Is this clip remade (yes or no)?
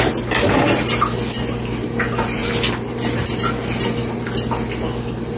no